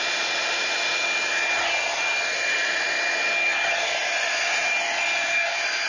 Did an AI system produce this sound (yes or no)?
no